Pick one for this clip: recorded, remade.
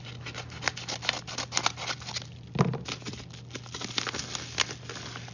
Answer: recorded